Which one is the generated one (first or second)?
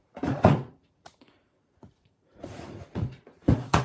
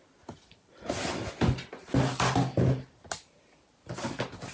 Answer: first